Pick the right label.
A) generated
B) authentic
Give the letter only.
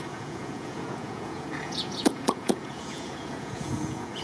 A